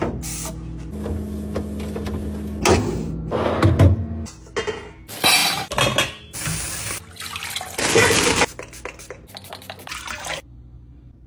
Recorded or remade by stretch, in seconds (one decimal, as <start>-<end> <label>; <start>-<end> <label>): 0.0-11.3 recorded